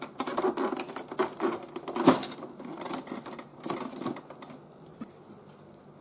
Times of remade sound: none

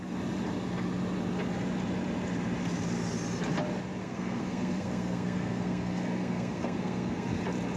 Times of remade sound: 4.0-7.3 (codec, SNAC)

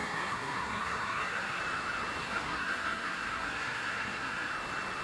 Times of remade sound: 0.0-1.6 (codec, SNAC); 2.2-4.5

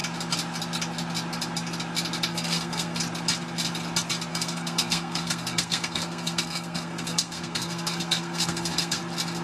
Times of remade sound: 2.3-3.0 (codec, SNAC); 4.3-9.0